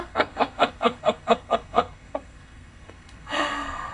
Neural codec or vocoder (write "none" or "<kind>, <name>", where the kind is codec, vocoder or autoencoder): codec, SNAC